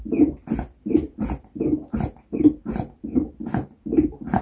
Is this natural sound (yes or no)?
yes